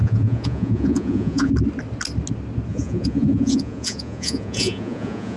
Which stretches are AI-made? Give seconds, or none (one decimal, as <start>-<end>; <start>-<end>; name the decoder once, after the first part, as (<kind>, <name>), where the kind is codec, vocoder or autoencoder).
0.0-1.5 (vocoder, Vocos); 2.7-5.4

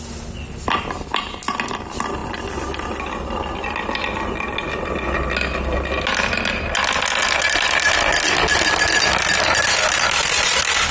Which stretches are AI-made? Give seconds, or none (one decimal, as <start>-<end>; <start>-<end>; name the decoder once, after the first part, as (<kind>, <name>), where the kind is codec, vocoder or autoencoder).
none

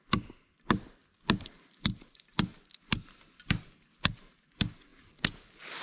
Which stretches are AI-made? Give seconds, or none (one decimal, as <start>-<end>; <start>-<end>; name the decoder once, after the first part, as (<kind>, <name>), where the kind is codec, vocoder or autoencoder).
none